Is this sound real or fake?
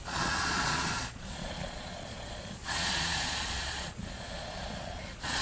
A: fake